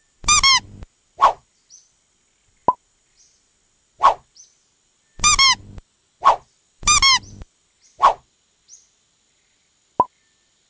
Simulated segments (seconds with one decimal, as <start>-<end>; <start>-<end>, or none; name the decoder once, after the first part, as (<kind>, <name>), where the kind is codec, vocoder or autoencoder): none

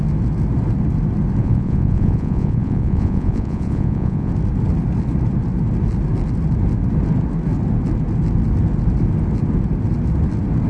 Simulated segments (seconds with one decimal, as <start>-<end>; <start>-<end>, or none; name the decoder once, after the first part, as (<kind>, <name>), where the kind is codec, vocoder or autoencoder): 1.4-4.3 (vocoder, Vocos)

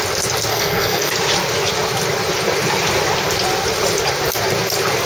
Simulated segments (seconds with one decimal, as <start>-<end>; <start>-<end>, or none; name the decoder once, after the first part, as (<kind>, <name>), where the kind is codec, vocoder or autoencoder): 0.5-1.1 (codec, SNAC)

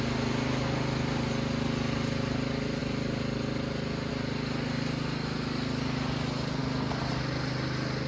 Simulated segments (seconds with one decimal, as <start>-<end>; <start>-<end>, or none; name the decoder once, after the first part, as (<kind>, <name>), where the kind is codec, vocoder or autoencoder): none

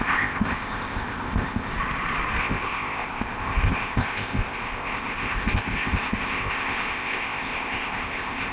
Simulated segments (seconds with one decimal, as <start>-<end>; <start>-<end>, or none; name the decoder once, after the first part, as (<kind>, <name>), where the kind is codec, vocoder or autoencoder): 0.0-1.7 (codec, ZipCodec); 2.4-8.5

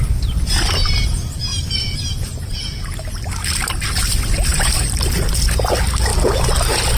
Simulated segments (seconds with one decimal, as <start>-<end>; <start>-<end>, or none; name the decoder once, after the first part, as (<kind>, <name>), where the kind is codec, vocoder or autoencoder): 1.5-4.0 (vocoder, BigVGAN v2); 4.5-5.3

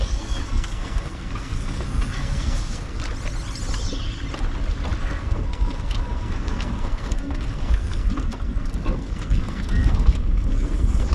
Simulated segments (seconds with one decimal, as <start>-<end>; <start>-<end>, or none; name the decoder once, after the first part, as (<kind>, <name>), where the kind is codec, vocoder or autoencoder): 0.0-3.0 (codec, SNAC); 5.0-11.1